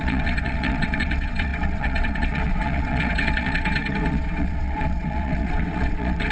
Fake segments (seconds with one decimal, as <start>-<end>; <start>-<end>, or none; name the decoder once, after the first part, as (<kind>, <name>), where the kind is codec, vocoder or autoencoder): 0.0-6.3 (vocoder, WaveNeXt)